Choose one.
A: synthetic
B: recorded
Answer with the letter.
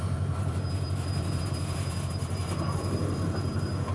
B